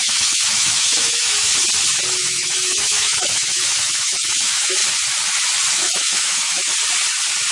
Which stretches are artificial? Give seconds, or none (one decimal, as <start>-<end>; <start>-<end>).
0.0-1.5; 2.2-4.8; 5.7-6.7